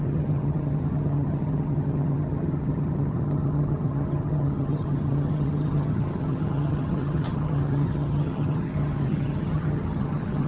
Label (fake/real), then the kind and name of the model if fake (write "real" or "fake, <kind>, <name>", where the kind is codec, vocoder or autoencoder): fake, vocoder, HiFi-GAN